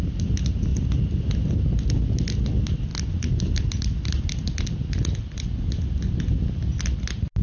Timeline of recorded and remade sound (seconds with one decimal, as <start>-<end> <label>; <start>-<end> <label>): 0.0-7.4 recorded